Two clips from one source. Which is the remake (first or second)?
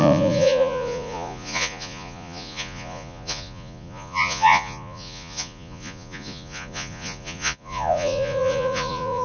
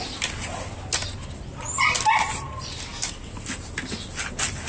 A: first